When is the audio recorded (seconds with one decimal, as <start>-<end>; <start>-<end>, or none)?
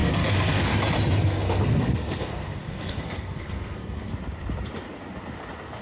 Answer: 0.6-1.2; 4.1-5.8